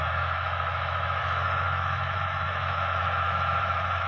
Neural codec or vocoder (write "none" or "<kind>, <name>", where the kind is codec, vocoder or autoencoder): autoencoder, DAC-VAE